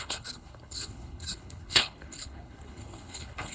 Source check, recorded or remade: remade